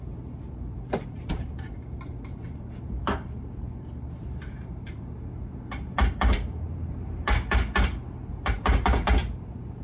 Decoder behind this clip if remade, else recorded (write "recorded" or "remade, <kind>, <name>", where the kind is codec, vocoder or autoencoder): remade, vocoder, BigVGAN v2